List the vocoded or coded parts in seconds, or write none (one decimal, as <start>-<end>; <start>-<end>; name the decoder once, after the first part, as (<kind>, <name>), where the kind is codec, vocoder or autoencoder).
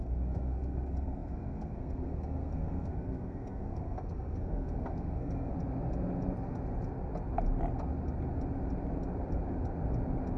0.0-5.5 (codec, SNAC)